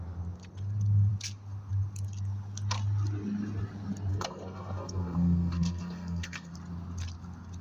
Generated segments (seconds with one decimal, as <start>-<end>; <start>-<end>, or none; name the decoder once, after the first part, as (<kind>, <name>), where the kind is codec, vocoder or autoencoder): 4.1-6.5 (codec, SNAC)